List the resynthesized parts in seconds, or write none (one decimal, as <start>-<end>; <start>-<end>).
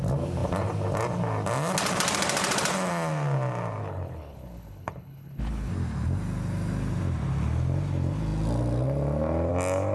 3.8-5.7